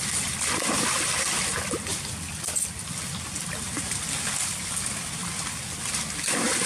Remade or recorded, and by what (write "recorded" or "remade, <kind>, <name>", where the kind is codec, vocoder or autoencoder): recorded